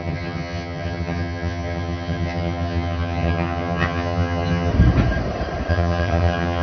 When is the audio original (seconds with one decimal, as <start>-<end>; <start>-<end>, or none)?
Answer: 4.7-5.7